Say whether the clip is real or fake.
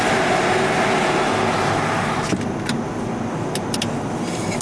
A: real